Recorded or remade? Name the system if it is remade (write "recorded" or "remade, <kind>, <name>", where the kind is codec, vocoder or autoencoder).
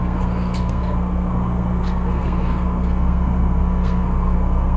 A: remade, codec, SNAC